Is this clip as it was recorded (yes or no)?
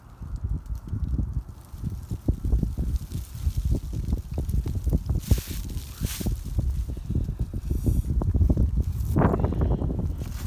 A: yes